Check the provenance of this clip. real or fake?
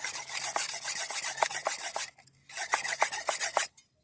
real